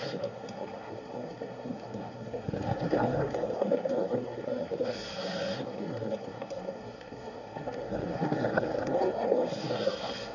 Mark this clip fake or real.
fake